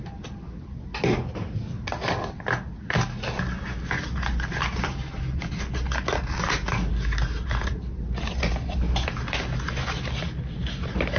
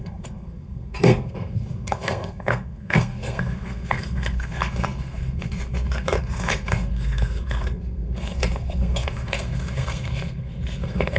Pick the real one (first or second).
first